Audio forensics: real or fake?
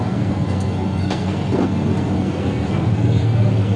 fake